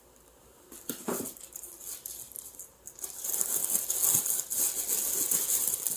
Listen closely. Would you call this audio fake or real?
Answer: real